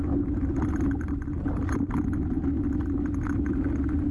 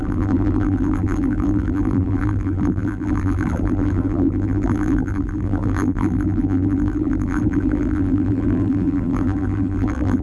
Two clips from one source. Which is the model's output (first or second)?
second